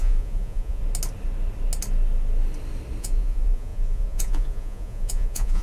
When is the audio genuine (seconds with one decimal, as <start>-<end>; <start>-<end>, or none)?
0.8-3.0